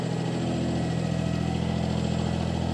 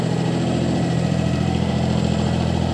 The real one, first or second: first